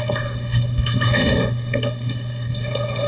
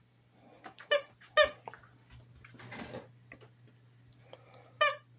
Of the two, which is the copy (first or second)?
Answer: first